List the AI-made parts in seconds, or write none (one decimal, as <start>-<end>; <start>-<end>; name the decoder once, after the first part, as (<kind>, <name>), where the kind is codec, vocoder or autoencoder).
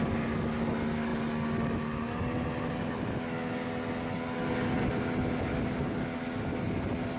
none